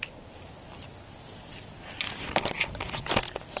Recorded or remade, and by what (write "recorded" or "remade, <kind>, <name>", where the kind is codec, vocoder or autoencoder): recorded